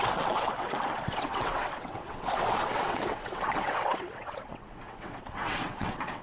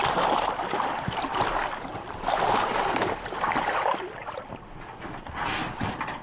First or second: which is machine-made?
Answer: first